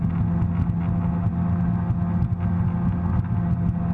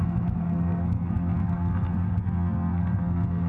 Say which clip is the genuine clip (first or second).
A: first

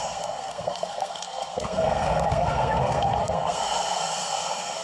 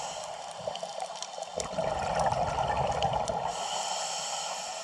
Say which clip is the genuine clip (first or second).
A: second